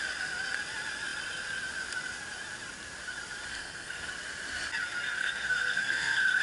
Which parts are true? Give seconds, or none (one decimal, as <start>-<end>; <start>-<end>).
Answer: 0.0-3.5; 4.1-5.2